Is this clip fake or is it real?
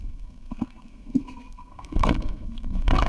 fake